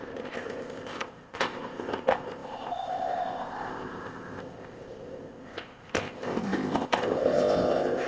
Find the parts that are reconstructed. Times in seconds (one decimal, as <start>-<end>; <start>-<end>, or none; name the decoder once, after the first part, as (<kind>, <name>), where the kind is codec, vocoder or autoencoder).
0.0-8.1 (codec, ZipCodec)